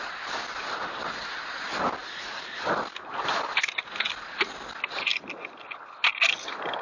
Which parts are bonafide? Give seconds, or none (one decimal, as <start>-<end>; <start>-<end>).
0.0-6.8